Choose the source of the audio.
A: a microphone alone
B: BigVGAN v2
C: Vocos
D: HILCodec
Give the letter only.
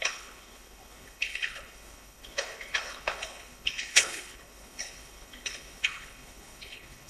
D